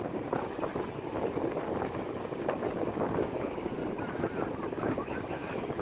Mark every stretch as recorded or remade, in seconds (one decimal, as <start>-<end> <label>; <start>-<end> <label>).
0.0-0.7 remade; 0.7-1.9 recorded; 1.9-3.8 remade; 3.8-4.8 recorded; 4.8-5.8 remade